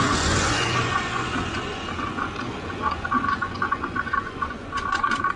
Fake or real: fake